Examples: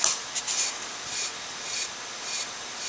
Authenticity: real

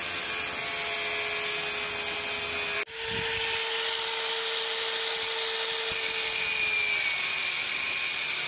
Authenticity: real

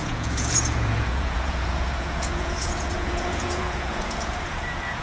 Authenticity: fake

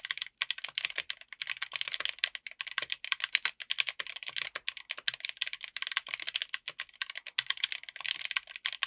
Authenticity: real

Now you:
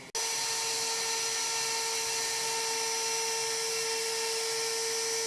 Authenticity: real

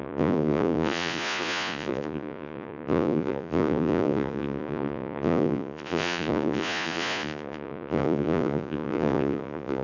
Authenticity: fake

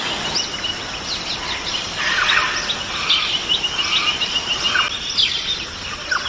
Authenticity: real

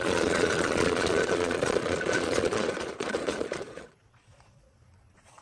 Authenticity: fake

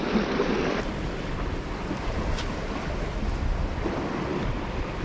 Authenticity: real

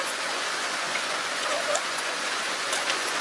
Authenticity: fake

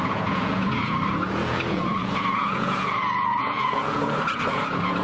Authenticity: fake